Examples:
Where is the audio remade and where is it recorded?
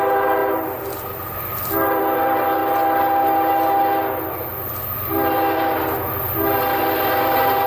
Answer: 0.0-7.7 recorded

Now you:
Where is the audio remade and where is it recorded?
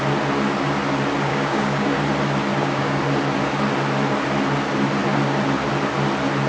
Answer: 0.0-1.3 recorded; 1.3-2.0 remade; 2.0-2.5 recorded; 2.5-3.0 remade; 3.0-6.5 recorded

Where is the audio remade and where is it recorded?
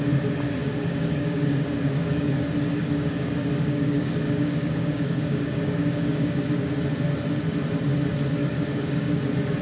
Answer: 0.0-0.6 recorded; 0.6-2.3 remade; 2.3-2.8 recorded; 2.8-6.7 remade; 6.7-8.4 recorded; 8.4-9.2 remade; 9.2-9.6 recorded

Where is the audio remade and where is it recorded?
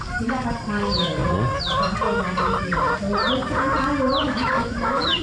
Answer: 0.0-1.2 remade; 1.2-4.2 recorded; 4.2-5.2 remade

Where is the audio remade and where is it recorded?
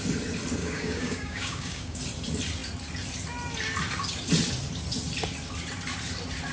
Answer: 0.0-0.6 recorded; 0.6-2.0 remade; 2.0-6.5 recorded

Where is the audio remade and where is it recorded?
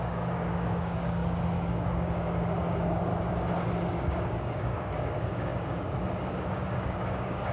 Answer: 0.0-1.2 remade; 1.2-1.7 recorded; 1.7-3.1 remade; 3.1-3.9 recorded; 3.9-7.5 remade